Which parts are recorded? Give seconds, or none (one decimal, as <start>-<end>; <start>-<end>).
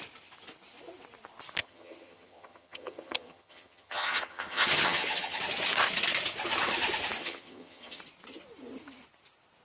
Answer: 0.0-1.6; 5.4-7.2; 8.0-9.6